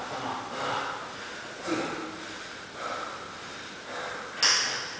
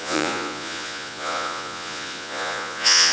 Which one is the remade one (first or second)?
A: second